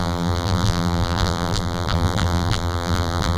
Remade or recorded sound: remade